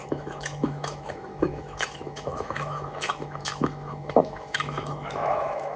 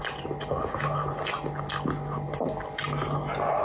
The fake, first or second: first